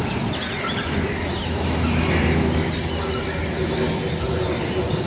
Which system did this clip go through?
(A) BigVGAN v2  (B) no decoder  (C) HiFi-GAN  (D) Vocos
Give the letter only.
B